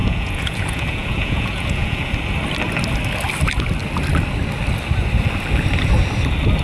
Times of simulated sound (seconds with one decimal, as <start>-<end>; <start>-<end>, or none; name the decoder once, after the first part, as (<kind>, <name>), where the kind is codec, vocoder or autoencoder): 0.0-2.1 (vocoder, Vocos)